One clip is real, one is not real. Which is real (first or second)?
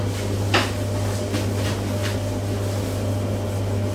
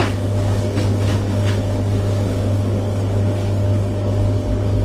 first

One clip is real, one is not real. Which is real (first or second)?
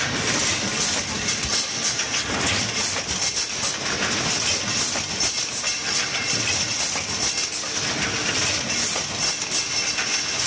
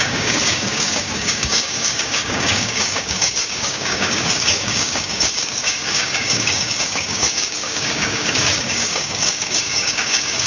first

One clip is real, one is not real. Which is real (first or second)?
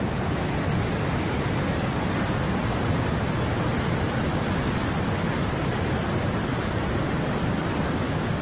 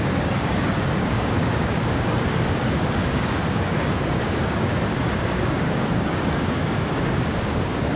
first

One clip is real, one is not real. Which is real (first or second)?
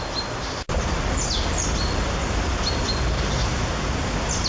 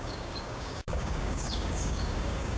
first